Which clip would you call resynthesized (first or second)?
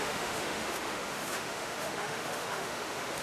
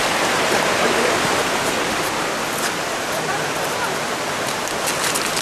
first